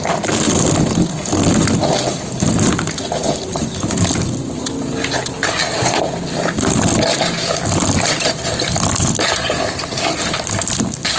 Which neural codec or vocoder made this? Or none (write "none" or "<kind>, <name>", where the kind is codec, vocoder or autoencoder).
none